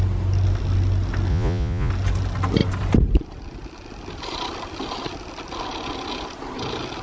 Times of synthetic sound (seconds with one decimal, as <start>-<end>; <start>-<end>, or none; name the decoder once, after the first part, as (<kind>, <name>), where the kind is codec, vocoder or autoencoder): 1.3-1.9 (vocoder, Vocos)